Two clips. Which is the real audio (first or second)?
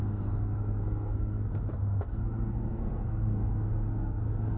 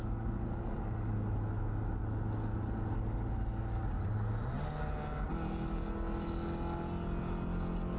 second